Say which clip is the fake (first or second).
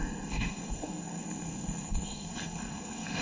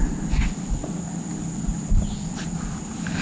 first